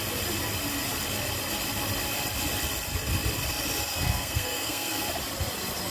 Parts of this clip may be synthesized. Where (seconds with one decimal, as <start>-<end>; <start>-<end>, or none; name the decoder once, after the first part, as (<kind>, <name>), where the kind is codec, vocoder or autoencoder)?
3.9-5.1 (codec, SNAC)